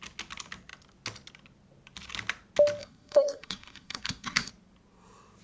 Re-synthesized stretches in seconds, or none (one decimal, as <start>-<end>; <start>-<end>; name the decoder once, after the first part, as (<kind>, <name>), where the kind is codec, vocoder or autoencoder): 2.8-4.5 (codec, SNAC)